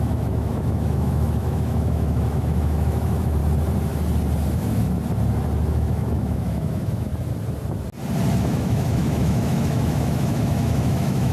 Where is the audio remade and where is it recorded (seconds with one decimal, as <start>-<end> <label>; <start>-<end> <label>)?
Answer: 0.0-3.4 remade; 3.4-4.5 recorded; 4.5-5.0 remade; 5.0-5.7 recorded; 5.7-7.1 remade; 7.1-8.4 recorded; 8.4-11.3 remade